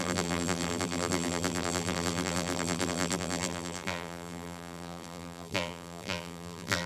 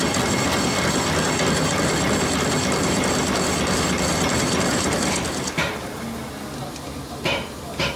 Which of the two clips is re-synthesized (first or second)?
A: first